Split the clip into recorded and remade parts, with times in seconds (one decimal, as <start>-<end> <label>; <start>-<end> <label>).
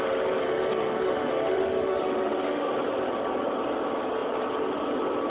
0.0-0.4 recorded; 0.4-2.7 remade; 2.7-5.3 recorded